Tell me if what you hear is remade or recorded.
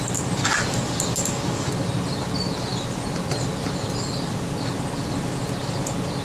recorded